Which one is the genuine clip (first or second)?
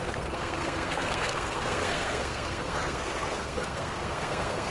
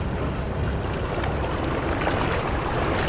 second